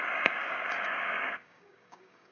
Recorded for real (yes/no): no